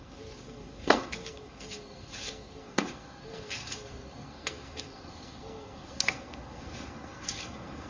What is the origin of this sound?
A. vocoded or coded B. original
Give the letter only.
A